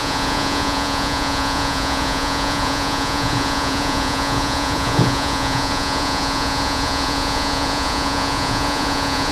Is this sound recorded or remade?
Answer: remade